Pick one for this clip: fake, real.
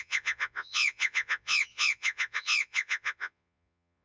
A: fake